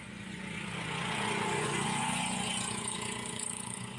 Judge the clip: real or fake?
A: fake